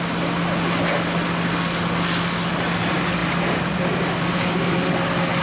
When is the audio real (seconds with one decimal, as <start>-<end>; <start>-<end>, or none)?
0.0-5.4